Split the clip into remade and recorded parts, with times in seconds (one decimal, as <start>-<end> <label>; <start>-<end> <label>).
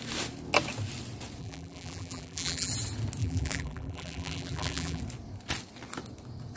0.0-1.4 recorded; 1.4-2.7 remade; 2.7-3.2 recorded; 3.2-5.0 remade; 5.0-6.6 recorded